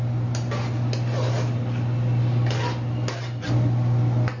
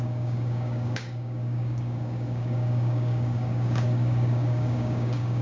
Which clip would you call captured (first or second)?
first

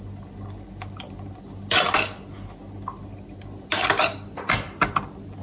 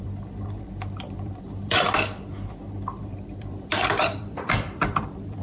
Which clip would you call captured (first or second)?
first